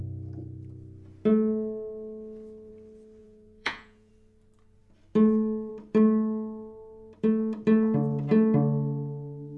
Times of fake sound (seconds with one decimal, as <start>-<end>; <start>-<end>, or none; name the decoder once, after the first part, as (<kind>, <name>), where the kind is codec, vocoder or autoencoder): 3.2-4.1 (vocoder, Vocos)